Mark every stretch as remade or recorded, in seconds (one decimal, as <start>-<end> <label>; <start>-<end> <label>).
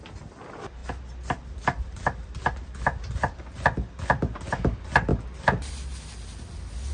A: 0.0-6.9 recorded